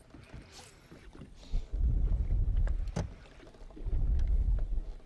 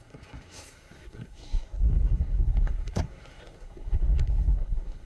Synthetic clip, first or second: second